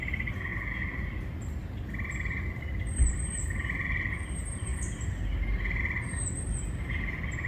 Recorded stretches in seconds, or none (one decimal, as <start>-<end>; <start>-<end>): 0.0-7.5